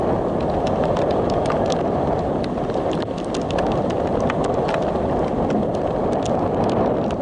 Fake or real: real